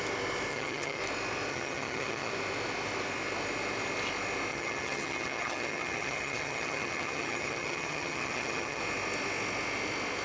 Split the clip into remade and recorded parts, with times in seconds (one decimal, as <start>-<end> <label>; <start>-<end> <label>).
0.0-0.5 recorded; 0.5-1.0 remade; 1.0-1.5 recorded; 1.5-2.3 remade; 2.3-4.5 recorded; 4.5-8.8 remade; 8.8-10.2 recorded